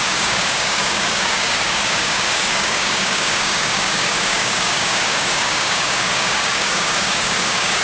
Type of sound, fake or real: fake